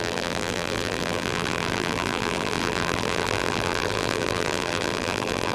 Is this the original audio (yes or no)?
no